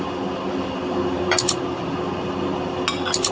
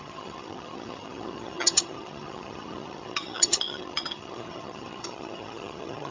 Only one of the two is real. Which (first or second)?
first